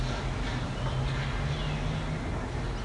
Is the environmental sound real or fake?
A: real